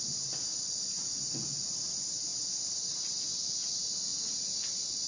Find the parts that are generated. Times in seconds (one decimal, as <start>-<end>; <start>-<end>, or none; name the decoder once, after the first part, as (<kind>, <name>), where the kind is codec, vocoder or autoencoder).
none